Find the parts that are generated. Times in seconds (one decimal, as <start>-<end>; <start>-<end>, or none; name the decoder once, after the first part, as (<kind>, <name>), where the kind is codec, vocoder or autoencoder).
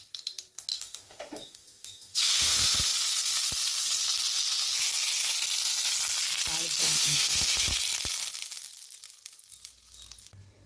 0.7-2.9 (autoencoder, DAC-VAE); 6.8-7.8